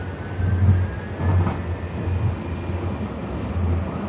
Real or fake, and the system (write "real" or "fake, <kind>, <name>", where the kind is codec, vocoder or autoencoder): real